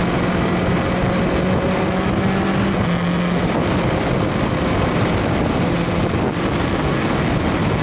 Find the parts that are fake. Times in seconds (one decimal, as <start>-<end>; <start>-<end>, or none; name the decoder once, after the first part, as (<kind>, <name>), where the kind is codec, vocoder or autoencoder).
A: none